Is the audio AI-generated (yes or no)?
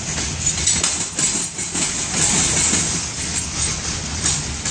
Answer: no